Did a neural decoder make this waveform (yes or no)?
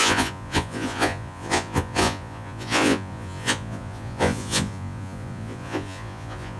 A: yes